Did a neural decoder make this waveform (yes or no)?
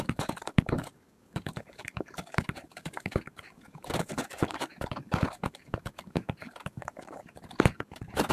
yes